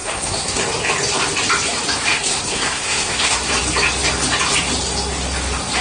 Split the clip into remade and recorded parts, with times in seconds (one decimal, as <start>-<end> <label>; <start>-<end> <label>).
0.0-0.6 remade; 0.6-2.1 recorded; 2.1-3.5 remade; 3.5-5.8 recorded